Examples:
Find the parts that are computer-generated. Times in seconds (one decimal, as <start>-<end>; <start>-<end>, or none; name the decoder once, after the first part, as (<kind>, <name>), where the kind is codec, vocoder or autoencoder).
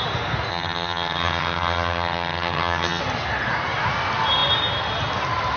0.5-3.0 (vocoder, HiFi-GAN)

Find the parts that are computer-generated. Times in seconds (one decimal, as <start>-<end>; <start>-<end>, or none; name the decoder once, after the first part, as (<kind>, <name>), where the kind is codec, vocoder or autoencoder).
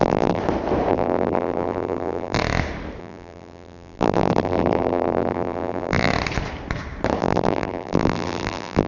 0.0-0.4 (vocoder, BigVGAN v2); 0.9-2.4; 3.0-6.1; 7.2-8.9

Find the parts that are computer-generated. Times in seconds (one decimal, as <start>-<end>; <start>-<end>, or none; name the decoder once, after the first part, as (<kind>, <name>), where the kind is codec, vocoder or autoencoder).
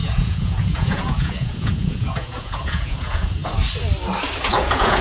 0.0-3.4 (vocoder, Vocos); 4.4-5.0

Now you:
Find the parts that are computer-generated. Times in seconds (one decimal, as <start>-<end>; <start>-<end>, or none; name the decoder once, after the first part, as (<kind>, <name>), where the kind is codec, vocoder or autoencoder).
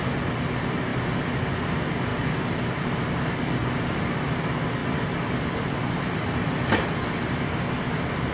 0.9-1.5 (vocoder, BigVGAN v2); 2.1-2.8; 4.8-7.4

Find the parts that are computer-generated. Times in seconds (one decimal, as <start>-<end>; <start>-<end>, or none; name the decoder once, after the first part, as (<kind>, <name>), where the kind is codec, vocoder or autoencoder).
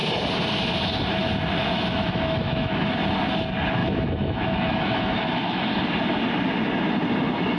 1.6-2.9 (autoencoder, DAC-VAE); 3.8-5.7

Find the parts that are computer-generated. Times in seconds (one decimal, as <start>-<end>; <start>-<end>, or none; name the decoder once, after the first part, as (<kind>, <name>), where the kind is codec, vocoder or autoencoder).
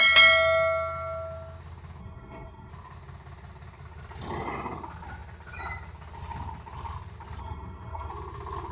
2.0-2.7 (codec, SNAC); 7.4-8.1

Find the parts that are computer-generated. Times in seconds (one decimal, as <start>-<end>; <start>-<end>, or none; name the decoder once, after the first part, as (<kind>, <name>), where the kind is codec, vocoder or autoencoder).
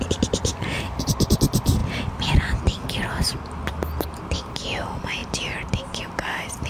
none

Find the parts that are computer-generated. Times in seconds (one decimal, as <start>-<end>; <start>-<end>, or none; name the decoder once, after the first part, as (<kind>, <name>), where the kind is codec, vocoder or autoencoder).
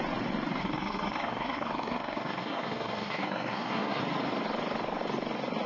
0.6-4.0 (codec, SNAC)